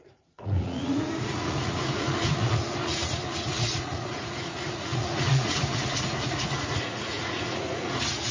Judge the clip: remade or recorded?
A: remade